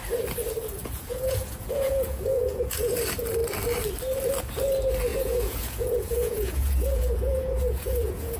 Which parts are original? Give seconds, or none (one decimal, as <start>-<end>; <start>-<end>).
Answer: 0.0-0.8; 3.0-5.1